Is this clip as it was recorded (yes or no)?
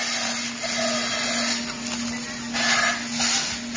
yes